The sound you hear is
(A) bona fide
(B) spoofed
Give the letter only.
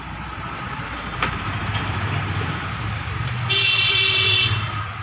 B